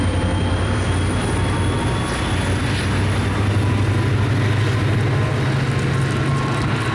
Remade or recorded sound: recorded